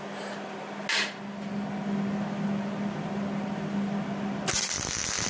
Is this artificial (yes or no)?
no